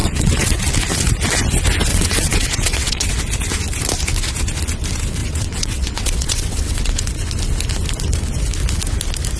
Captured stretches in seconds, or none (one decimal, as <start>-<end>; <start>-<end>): 0.6-1.9; 3.1-5.2; 7.1-9.4